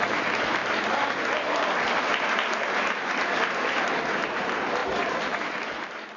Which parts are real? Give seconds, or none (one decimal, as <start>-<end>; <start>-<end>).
0.0-6.2